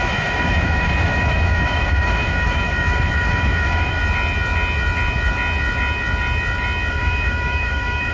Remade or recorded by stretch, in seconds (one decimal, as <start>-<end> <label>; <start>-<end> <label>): 0.0-4.0 remade; 4.0-6.9 recorded; 6.9-8.1 remade